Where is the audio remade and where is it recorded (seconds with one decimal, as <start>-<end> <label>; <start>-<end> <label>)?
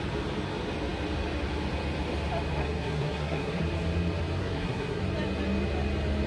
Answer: 0.0-2.6 recorded; 2.6-3.6 remade; 3.6-4.4 recorded; 4.4-5.0 remade; 5.0-6.3 recorded